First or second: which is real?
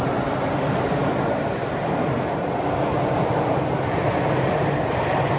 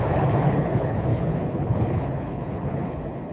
first